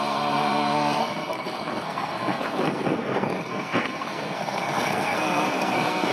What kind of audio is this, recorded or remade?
remade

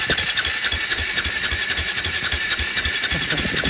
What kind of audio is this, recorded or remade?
remade